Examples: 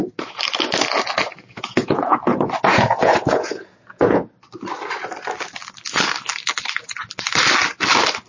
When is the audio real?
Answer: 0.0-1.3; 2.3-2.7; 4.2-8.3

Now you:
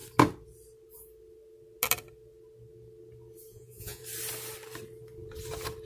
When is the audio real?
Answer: 0.0-3.5; 4.0-5.9

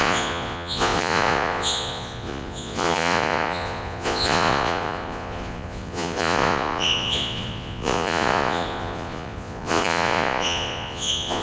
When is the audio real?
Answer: none

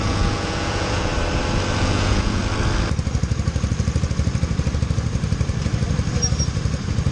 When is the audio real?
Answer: 1.1-1.8; 2.4-7.1

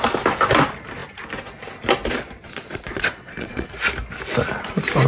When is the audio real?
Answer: 0.0-2.4; 3.7-5.1

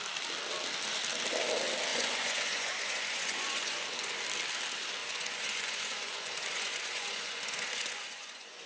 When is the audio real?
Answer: 0.0-1.9; 4.2-5.0